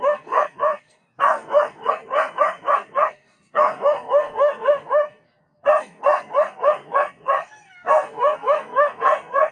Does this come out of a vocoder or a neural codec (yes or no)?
yes